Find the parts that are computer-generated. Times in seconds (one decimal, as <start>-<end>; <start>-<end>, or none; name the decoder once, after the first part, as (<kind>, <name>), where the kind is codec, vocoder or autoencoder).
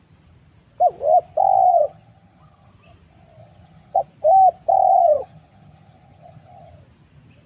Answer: 1.7-2.7 (vocoder, HiFi-GAN); 3.4-4.0; 4.9-6.7